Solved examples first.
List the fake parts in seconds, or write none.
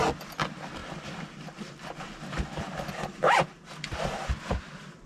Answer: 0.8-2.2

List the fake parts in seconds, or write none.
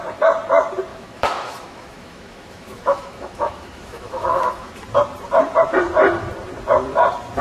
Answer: 0.9-4.7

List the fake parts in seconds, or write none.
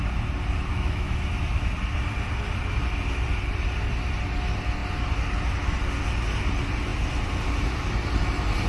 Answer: 0.7-1.7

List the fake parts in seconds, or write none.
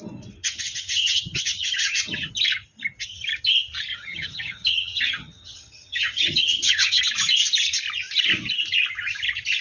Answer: 0.4-2.3; 3.9-7.0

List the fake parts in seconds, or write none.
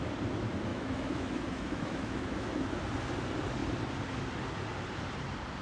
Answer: 0.7-2.7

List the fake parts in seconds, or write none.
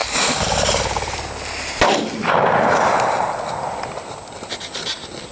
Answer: none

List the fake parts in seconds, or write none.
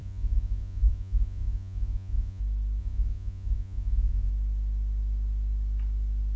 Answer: 0.0-2.4; 2.8-4.3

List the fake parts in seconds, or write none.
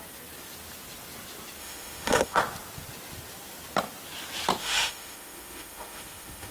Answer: 1.6-2.4; 4.6-6.5